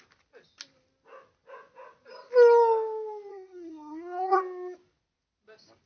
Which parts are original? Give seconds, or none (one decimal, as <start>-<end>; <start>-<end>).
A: 0.0-3.3; 4.4-5.9